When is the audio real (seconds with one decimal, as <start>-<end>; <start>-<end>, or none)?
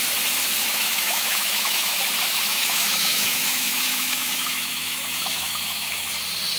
0.0-0.6; 2.0-2.5; 6.1-6.6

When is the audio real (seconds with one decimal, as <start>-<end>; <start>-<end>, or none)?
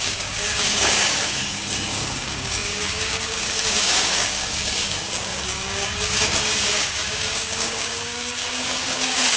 none